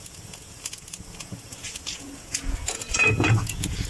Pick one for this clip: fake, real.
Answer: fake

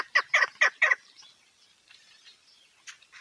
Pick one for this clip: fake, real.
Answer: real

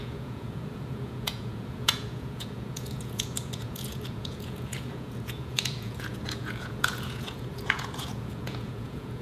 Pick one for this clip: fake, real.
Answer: fake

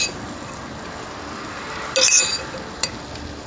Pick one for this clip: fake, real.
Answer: real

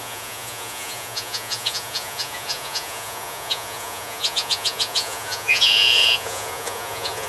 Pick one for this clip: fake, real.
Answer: fake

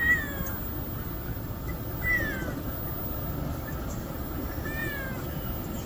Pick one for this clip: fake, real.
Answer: real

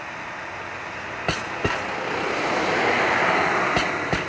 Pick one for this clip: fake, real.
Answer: real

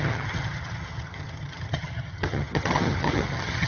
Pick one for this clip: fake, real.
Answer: fake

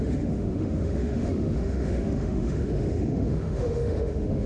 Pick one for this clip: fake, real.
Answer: fake